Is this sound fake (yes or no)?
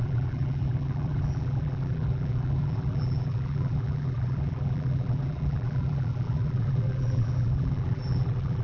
yes